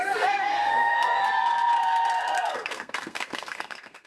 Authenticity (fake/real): fake